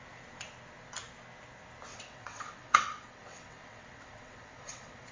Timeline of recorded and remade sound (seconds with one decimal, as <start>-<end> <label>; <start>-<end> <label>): 0.0-1.9 recorded; 1.9-5.1 remade